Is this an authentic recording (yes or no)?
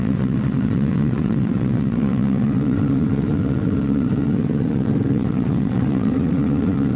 no